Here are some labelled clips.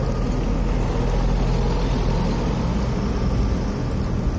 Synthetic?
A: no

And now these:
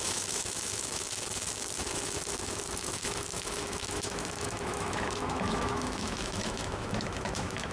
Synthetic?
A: yes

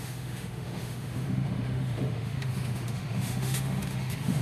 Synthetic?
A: yes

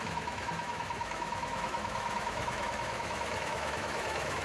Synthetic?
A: yes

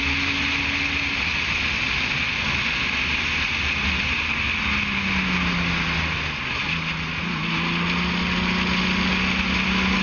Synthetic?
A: no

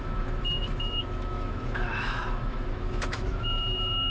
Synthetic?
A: yes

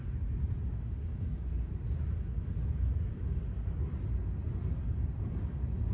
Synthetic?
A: no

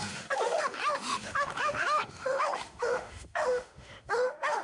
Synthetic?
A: yes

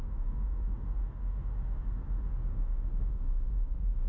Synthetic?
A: yes